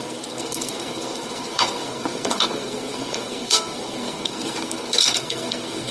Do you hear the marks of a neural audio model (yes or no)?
yes